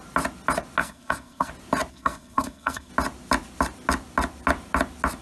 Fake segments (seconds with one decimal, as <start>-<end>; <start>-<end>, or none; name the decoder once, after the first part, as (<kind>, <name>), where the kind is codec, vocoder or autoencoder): 0.8-1.5 (codec, SNAC); 1.9-2.9